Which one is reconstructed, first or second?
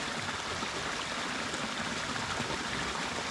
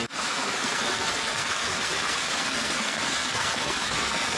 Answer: second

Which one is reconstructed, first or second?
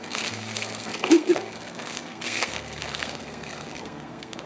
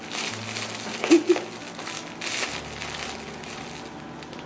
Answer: first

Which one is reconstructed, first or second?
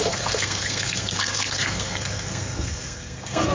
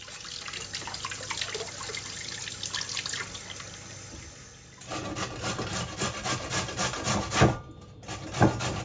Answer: first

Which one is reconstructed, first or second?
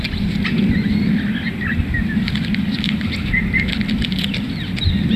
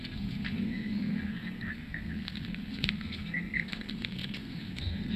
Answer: second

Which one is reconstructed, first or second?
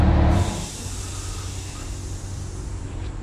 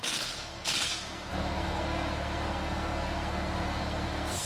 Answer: second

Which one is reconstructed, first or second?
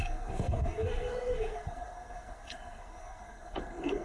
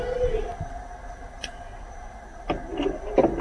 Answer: first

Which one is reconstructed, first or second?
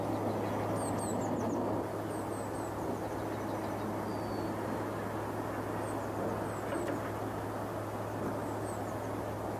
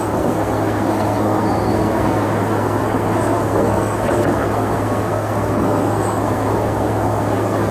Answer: second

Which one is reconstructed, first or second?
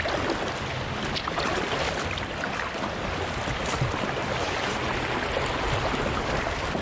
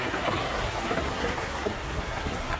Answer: second